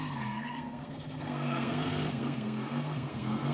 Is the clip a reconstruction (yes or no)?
yes